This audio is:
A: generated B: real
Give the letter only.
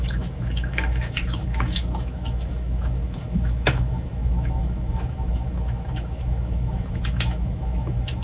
A